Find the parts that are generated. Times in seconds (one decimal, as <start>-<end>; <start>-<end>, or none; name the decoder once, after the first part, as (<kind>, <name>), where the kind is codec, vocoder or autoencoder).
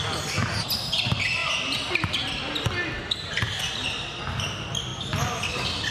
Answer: none